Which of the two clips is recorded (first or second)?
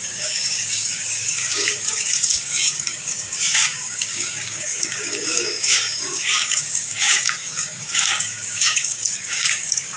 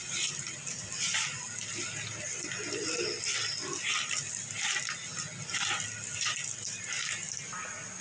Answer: second